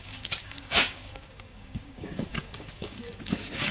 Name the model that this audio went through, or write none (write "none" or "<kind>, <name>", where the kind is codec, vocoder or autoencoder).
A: codec, DAC